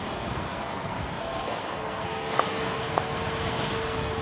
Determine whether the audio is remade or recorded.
remade